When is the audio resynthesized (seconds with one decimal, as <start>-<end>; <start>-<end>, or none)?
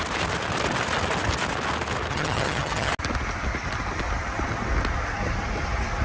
2.1-2.9